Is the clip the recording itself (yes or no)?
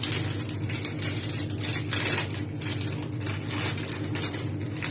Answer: yes